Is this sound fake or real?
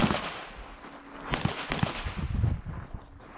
real